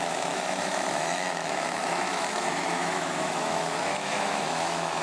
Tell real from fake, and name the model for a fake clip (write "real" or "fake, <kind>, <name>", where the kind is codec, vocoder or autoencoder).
fake, autoencoder, DAC-VAE